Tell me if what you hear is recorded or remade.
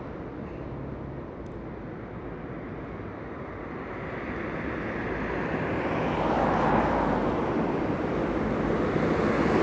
recorded